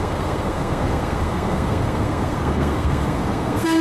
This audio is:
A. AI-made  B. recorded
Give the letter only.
A